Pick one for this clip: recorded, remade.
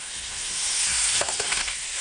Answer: remade